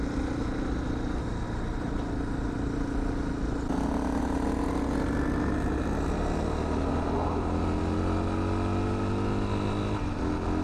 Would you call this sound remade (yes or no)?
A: no